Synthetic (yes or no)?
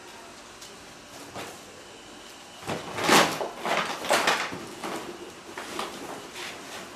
no